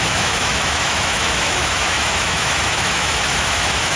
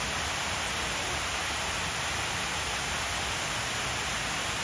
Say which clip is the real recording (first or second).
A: second